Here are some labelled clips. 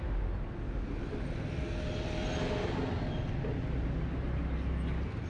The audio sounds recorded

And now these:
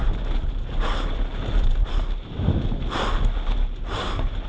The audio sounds recorded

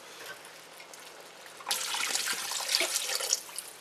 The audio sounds recorded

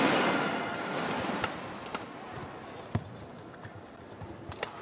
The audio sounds recorded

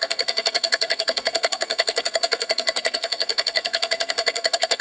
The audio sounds remade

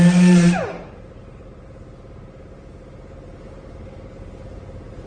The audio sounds recorded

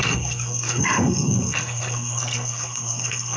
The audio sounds remade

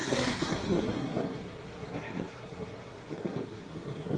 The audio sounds remade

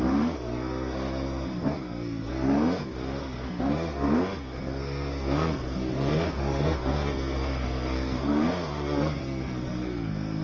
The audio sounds remade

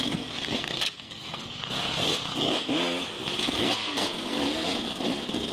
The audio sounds remade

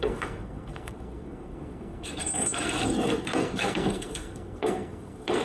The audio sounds remade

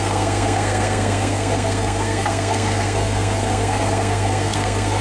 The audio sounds remade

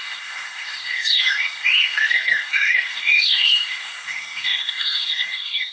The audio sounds remade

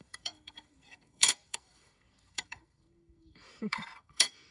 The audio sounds remade